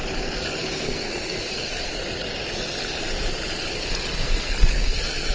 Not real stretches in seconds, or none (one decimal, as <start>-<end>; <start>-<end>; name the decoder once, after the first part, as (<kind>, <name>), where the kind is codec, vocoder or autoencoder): 0.7-2.0 (codec, SNAC); 4.1-5.3